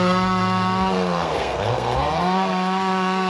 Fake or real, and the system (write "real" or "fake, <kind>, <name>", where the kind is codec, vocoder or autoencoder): fake, codec, SNAC